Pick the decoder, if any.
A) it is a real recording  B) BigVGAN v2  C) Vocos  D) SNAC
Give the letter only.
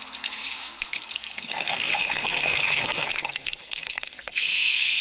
D